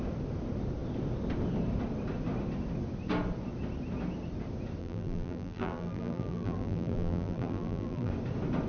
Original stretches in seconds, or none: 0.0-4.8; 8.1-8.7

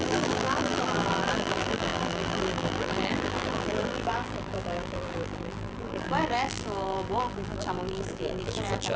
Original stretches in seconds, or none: none

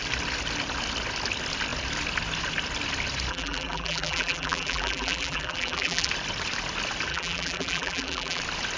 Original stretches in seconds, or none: 0.0-3.3; 6.1-7.1; 8.4-8.8

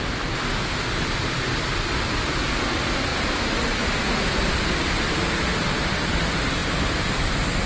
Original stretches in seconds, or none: 0.0-3.1; 5.1-6.6